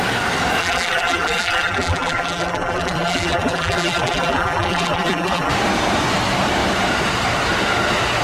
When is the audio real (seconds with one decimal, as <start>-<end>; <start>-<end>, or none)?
0.0-0.6; 5.5-8.2